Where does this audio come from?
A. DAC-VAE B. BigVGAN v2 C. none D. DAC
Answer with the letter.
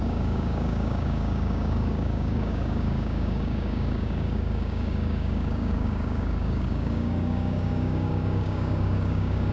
D